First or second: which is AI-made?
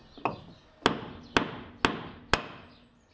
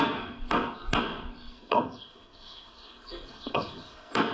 second